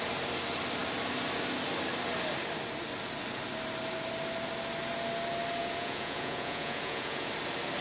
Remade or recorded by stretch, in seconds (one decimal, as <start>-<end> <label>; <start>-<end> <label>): 0.0-5.6 recorded; 5.6-7.3 remade; 7.3-7.8 recorded